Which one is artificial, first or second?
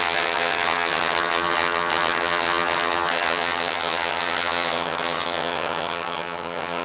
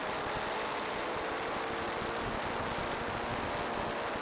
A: first